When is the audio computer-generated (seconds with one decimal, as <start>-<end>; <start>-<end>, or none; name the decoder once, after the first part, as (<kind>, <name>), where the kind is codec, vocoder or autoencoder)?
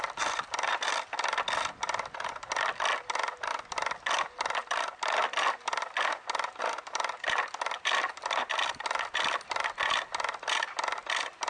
none